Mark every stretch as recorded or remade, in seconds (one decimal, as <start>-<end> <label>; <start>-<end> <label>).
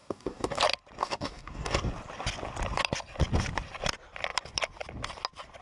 0.0-0.6 remade; 0.6-1.0 recorded; 1.0-1.9 remade; 1.9-5.6 recorded